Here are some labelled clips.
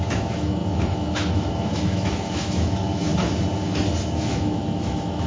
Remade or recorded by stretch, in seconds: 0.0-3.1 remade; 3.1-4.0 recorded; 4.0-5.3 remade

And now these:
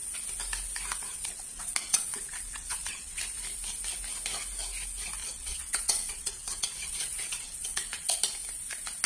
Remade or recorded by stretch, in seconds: 0.0-1.1 recorded; 1.1-3.2 remade; 3.2-5.2 recorded; 5.2-8.2 remade; 8.2-9.1 recorded

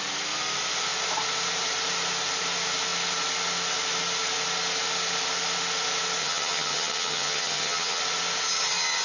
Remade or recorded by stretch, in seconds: 0.0-6.2 recorded; 6.2-8.0 remade; 8.0-9.0 recorded

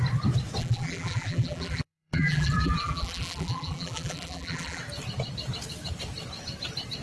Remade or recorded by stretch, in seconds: 0.0-0.6 recorded; 0.6-4.8 remade; 4.8-7.0 recorded

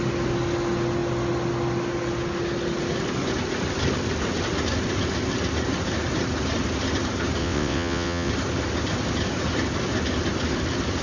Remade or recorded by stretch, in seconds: 0.0-7.4 recorded; 7.4-8.3 remade; 8.3-11.0 recorded

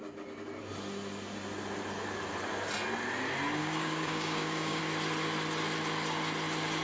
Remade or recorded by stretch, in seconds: 0.0-3.6 recorded; 3.6-4.8 remade; 4.8-6.8 recorded

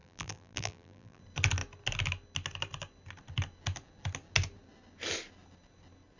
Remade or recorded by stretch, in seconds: 0.0-1.2 remade; 1.2-6.2 recorded

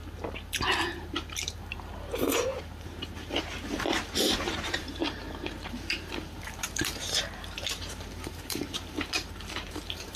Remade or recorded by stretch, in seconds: 0.0-0.9 recorded; 0.9-10.2 remade